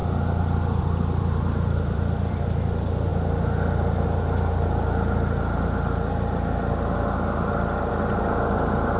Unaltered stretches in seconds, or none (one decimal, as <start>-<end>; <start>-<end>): 0.0-0.8; 3.1-8.2